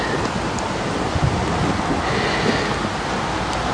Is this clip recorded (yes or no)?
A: yes